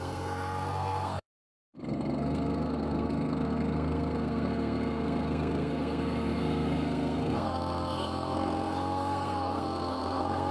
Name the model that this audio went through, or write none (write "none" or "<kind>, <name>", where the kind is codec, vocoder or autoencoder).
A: codec, SNAC